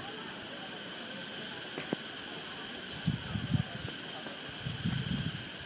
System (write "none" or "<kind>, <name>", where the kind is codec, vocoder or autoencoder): none